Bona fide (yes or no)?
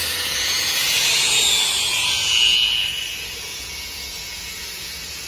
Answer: no